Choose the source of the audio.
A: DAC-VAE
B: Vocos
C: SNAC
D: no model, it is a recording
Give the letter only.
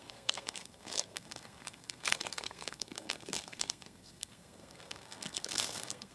C